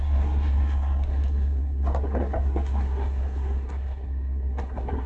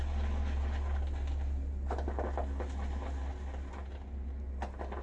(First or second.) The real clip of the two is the second